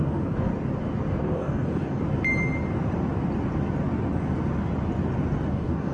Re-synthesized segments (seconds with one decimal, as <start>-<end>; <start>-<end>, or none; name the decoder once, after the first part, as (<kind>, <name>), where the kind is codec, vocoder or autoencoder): 0.0-0.5 (codec, DAC); 1.1-2.0; 5.5-5.9